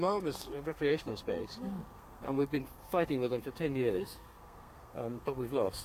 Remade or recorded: remade